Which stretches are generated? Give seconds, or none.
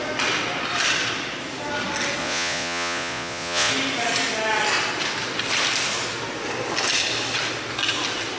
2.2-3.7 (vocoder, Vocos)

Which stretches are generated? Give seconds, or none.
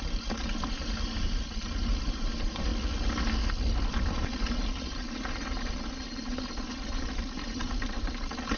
0.0-2.7 (vocoder, BigVGAN v2); 4.1-8.6